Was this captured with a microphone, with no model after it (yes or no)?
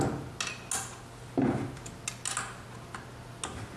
yes